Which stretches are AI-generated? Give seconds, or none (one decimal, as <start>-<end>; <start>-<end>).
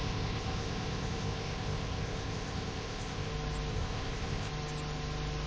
0.0-3.3; 3.7-4.5